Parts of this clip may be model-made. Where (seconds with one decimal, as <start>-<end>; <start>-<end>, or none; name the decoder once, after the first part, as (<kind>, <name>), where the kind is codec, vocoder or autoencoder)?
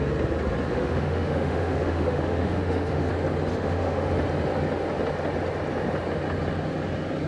0.7-3.1 (autoencoder, DAC-VAE); 3.5-4.1